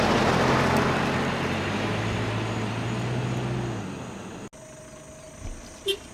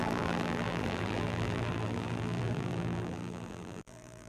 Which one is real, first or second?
first